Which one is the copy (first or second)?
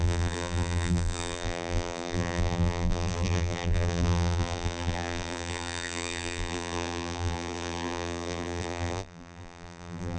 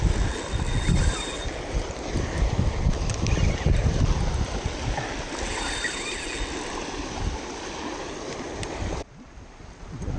first